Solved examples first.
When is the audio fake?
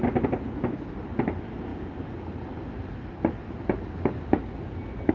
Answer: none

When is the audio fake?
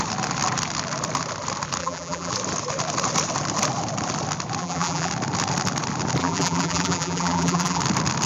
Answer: 1.8-2.3 (vocoder, BigVGAN v2); 4.6-5.1; 6.2-7.8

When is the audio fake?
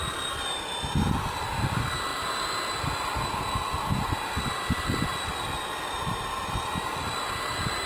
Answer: none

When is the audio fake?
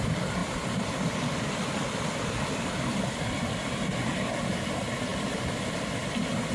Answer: 0.4-3.2 (vocoder, BigVGAN v2); 5.1-6.1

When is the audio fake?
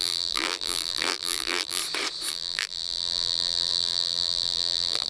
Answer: 0.0-1.8 (vocoder, BigVGAN v2); 2.3-5.1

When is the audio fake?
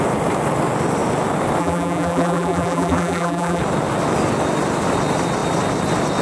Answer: 1.6-3.6 (vocoder, BigVGAN v2)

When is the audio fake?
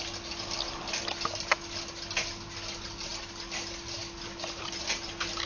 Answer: none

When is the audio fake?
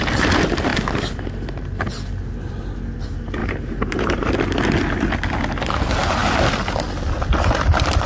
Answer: 3.4-4.3 (vocoder, BigVGAN v2)